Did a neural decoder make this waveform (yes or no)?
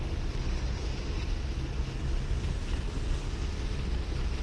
no